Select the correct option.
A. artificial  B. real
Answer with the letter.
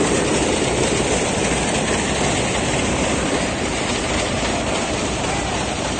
B